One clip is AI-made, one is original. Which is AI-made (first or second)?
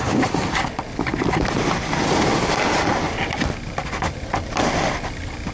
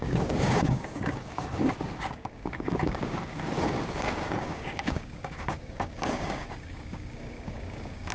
second